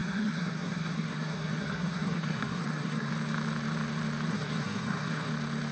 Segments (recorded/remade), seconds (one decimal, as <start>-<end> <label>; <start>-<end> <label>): 0.0-3.1 remade; 3.1-4.3 recorded; 4.3-5.3 remade; 5.3-5.7 recorded